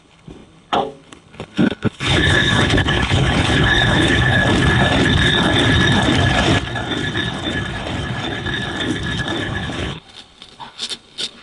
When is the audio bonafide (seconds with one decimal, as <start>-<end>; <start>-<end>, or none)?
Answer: 4.4-9.4